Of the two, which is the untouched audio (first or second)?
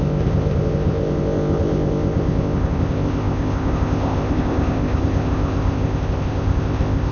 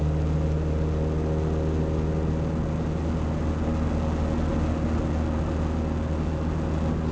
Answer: second